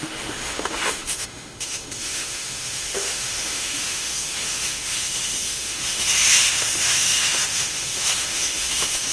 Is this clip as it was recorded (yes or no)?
no